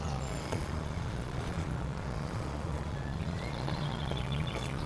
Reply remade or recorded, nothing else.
remade